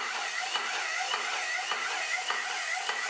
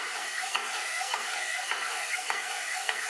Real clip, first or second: first